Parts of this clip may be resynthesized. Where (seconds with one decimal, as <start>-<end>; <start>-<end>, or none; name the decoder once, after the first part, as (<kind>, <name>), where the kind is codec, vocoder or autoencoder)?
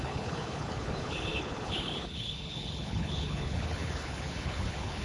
0.0-5.0 (codec, HILCodec)